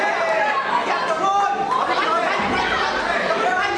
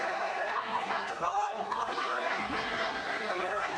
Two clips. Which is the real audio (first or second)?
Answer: first